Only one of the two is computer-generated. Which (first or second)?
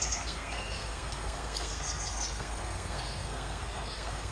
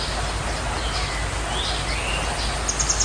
first